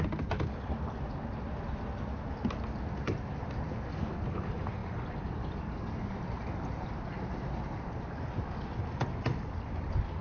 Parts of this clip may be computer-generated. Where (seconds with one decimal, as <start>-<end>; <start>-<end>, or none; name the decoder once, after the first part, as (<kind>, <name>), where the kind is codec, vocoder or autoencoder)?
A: none